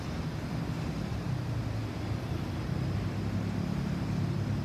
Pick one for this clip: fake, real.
real